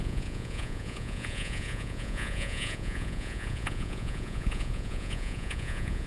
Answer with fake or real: fake